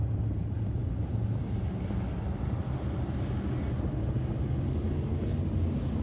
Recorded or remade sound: recorded